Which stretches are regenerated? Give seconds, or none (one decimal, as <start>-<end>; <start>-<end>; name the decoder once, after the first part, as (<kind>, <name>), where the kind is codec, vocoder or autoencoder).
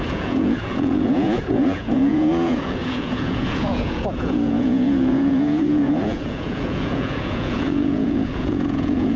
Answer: 0.0-9.2 (vocoder, Vocos)